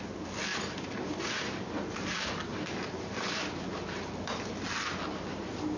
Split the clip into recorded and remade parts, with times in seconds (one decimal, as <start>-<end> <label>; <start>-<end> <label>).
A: 0.0-0.5 recorded; 0.5-1.7 remade; 1.7-2.5 recorded; 2.5-3.5 remade; 3.5-5.8 recorded